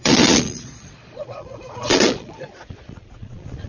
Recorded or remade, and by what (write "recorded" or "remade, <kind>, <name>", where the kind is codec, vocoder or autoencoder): remade, vocoder, Vocos